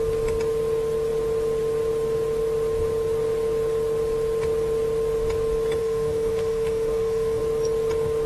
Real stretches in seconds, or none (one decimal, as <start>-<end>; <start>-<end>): 0.0-5.8; 7.4-8.3